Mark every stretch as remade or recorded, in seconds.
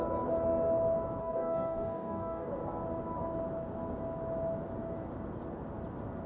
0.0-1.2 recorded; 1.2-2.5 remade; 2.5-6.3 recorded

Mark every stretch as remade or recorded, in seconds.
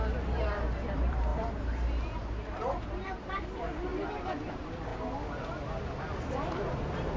0.0-4.9 remade; 4.9-6.0 recorded; 6.0-7.2 remade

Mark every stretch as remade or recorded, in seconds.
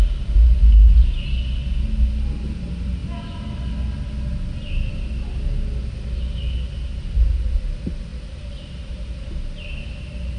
0.0-10.4 recorded